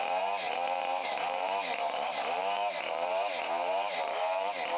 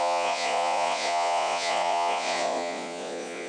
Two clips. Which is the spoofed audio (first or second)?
second